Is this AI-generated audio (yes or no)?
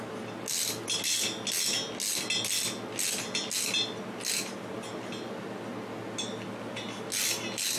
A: no